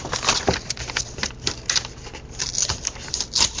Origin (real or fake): real